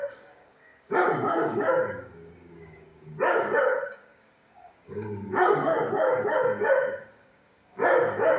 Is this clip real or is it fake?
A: fake